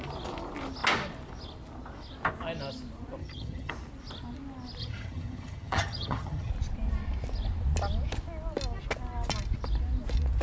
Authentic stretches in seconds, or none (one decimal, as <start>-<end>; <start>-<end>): 0.0-3.2; 3.7-4.8; 6.5-10.4